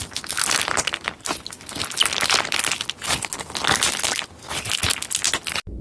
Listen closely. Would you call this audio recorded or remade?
recorded